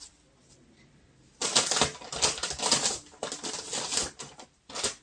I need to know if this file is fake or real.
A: real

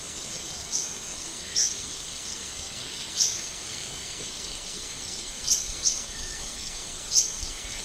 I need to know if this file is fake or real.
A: fake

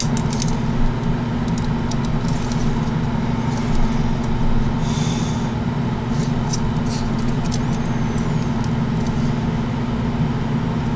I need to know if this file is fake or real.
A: real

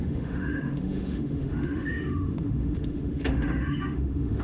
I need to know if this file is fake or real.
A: fake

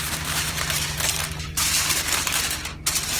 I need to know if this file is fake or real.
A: fake